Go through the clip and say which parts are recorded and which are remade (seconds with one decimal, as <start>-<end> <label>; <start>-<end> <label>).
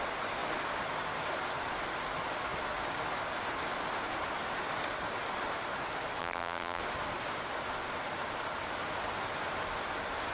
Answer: 0.0-6.2 recorded; 6.2-6.8 remade; 6.8-10.3 recorded